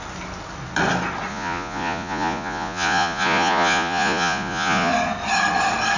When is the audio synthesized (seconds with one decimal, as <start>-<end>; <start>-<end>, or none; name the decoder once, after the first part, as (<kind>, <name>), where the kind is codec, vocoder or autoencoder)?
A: 1.3-4.9 (vocoder, Vocos)